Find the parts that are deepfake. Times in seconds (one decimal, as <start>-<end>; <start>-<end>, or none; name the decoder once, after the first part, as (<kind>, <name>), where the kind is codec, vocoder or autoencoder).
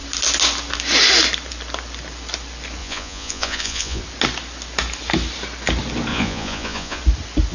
2.8-4.0 (vocoder, Vocos); 6.1-7.0